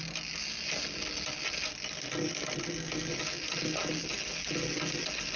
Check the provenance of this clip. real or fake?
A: real